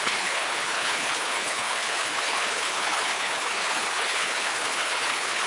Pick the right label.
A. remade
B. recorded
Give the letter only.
A